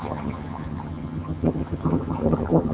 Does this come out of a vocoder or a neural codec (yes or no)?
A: yes